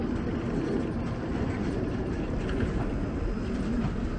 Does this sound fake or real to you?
real